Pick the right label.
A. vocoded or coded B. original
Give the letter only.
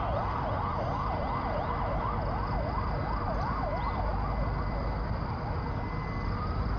B